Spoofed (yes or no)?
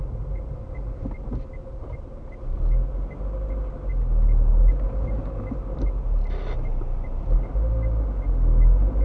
no